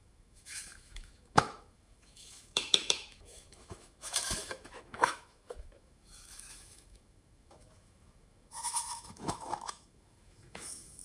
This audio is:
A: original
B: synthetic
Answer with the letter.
B